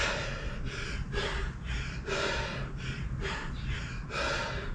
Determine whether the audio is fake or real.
real